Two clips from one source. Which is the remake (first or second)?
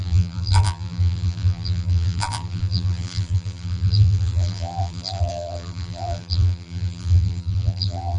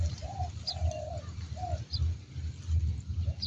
first